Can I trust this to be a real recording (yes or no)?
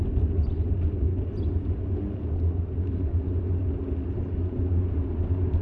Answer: yes